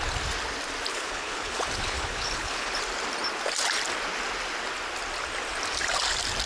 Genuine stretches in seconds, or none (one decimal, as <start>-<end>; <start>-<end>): 0.0-0.9; 2.8-6.5